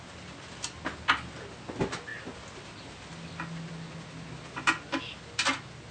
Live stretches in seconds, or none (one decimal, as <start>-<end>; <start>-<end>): 0.0-5.9